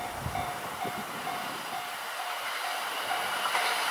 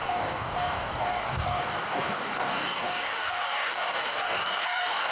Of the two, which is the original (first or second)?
first